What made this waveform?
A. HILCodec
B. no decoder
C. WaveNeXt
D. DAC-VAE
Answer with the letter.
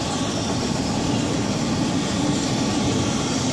B